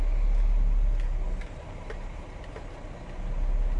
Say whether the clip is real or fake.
real